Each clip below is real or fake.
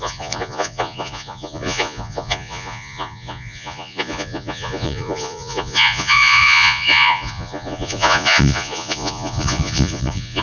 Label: fake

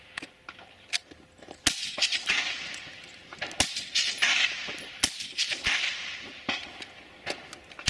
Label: real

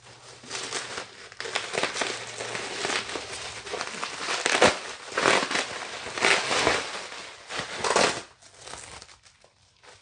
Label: real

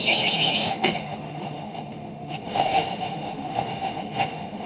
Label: fake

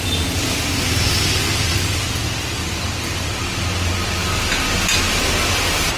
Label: real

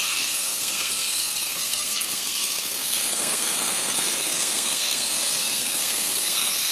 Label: fake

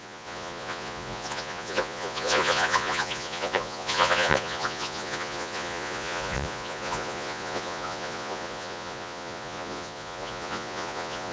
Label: fake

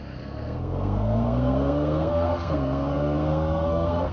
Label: fake